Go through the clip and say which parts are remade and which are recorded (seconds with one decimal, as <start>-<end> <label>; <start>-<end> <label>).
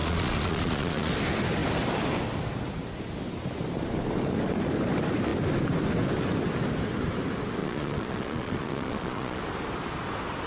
0.0-1.1 remade; 1.1-7.6 recorded; 7.6-9.4 remade; 9.4-10.5 recorded